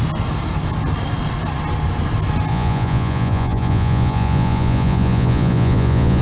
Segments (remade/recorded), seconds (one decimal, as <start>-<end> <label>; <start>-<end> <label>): 0.0-2.5 recorded; 2.5-6.2 remade